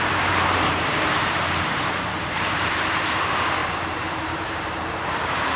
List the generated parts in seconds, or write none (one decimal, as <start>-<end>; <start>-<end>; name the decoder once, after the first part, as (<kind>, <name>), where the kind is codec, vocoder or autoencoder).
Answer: 0.0-5.6 (vocoder, BigVGAN v2)